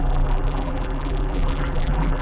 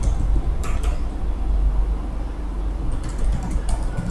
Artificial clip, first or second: first